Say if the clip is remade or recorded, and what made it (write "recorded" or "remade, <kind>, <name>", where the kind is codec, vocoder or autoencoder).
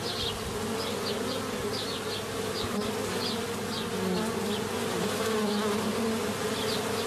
recorded